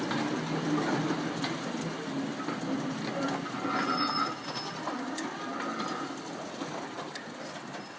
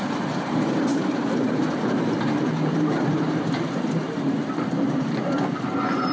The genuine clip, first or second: first